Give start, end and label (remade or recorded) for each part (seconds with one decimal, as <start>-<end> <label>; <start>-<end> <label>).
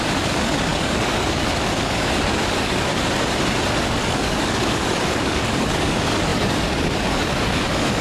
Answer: 0.0-2.9 remade; 2.9-3.8 recorded; 3.8-8.0 remade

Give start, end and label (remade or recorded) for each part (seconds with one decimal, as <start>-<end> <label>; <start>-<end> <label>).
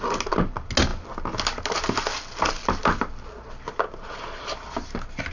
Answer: 0.0-5.3 recorded